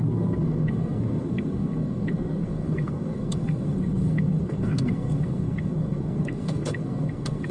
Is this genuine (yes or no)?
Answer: no